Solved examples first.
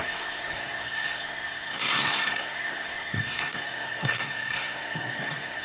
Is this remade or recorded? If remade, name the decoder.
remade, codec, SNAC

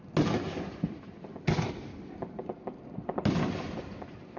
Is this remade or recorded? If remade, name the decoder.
recorded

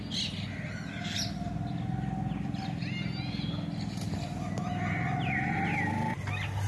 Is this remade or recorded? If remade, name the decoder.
recorded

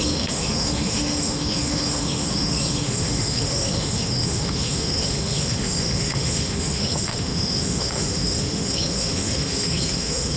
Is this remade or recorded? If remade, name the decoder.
remade, autoencoder, DAC-VAE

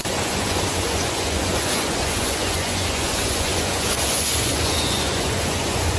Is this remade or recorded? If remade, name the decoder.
remade, vocoder, Vocos